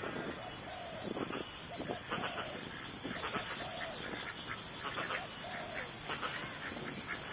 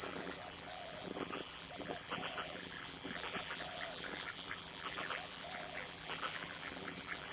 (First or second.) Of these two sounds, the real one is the first